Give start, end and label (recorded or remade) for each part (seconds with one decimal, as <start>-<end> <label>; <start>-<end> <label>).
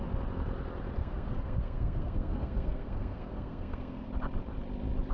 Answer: 0.0-1.0 recorded; 1.0-4.1 remade; 4.1-5.1 recorded